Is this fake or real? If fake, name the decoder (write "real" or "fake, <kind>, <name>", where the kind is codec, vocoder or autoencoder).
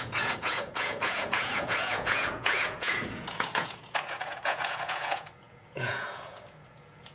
fake, vocoder, Vocos